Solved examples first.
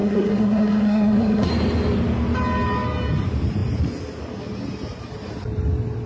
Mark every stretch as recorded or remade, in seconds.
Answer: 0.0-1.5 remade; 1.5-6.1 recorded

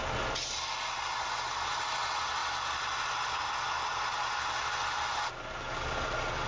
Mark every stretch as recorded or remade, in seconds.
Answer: 0.0-6.5 recorded

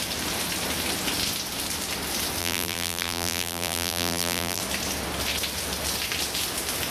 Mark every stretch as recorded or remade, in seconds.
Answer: 0.0-2.4 recorded; 2.4-4.6 remade; 4.6-6.9 recorded

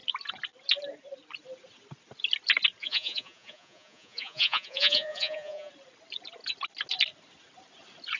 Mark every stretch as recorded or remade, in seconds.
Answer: 0.0-2.8 recorded; 2.8-5.7 remade; 5.7-8.2 recorded